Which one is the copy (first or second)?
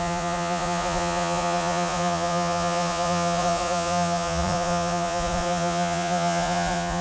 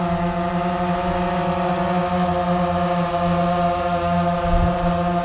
first